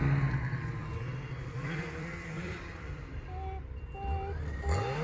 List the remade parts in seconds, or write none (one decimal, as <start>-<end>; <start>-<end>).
0.8-3.1